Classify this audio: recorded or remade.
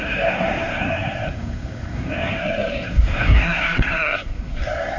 remade